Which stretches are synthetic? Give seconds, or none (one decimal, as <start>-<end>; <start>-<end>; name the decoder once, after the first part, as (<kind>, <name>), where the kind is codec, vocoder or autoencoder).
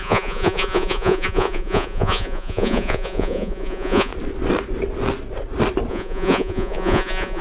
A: 0.0-4.1 (vocoder, Vocos); 5.9-7.4